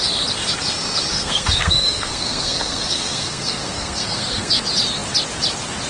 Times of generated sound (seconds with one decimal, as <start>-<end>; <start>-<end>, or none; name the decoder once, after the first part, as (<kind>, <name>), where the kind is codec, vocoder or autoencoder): 1.1-4.6 (codec, SNAC)